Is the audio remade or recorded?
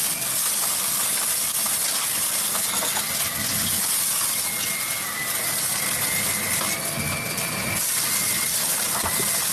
recorded